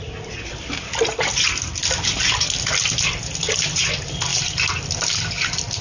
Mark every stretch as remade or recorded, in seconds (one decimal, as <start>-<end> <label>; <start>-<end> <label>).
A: 0.0-4.3 recorded; 4.3-5.8 remade